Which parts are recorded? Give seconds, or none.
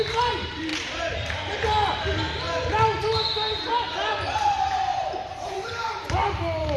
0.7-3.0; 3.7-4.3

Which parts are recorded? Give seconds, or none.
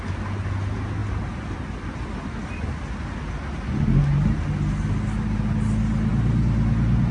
0.0-7.1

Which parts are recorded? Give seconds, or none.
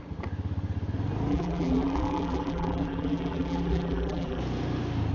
0.0-1.3; 4.4-5.1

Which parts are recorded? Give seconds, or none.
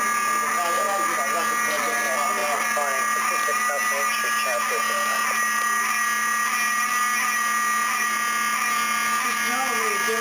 0.0-10.2